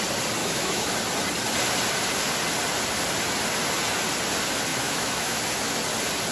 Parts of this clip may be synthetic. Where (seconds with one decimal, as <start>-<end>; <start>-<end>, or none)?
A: 0.4-0.9; 4.7-5.4

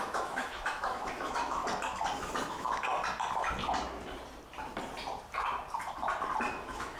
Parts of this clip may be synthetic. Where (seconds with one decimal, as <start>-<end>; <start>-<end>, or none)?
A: 0.0-1.6; 2.5-2.9; 6.5-7.0

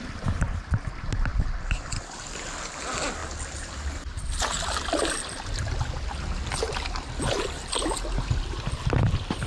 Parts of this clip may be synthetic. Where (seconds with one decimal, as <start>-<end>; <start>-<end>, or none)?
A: none

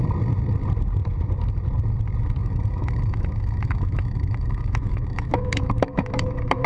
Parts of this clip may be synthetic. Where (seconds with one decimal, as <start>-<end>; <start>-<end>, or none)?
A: 2.4-6.7

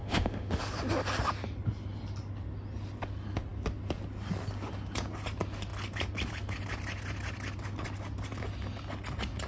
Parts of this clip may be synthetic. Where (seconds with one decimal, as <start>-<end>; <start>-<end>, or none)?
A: 0.0-0.6

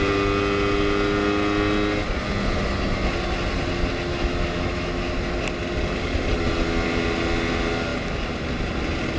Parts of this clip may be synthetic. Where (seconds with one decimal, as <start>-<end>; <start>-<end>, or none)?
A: 4.1-5.0

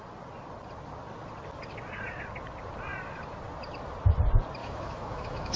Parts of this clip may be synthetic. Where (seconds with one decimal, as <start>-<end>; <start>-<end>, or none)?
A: 4.6-5.6

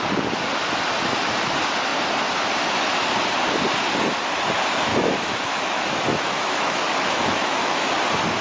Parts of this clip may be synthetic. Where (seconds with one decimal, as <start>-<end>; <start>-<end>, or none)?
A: 4.9-7.9